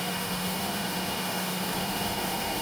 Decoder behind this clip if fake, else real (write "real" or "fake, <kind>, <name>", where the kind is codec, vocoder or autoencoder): fake, autoencoder, DAC-VAE